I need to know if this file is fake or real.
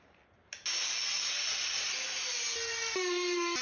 real